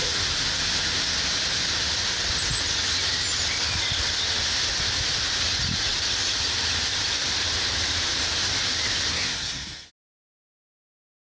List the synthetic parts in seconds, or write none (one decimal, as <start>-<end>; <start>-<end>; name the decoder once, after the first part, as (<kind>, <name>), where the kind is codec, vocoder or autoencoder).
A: 9.1-9.9 (codec, SNAC)